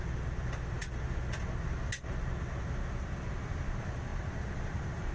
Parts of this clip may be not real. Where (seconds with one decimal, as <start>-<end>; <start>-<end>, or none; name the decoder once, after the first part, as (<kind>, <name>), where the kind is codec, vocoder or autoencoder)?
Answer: 4.1-5.1 (vocoder, BigVGAN v2)